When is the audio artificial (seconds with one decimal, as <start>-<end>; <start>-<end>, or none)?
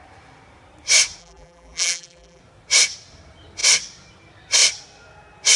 1.2-2.4